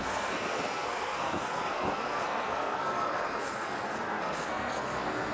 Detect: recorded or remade remade